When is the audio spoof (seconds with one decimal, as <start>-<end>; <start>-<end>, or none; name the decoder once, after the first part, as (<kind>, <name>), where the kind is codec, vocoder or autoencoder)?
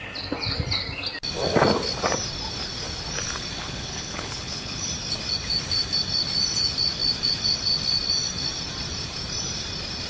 3.6-4.9 (codec, HILCodec)